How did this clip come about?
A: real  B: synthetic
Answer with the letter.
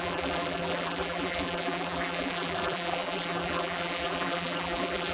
B